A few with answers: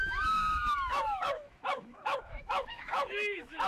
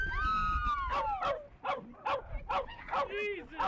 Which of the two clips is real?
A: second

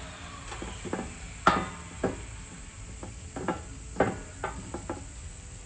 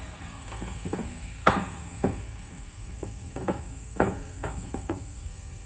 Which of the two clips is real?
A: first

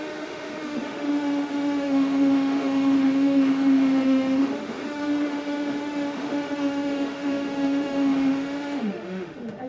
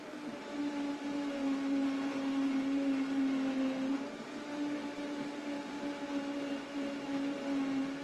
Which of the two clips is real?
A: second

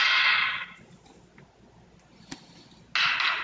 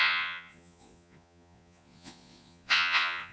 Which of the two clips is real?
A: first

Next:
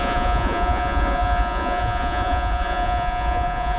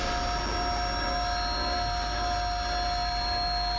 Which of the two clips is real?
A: second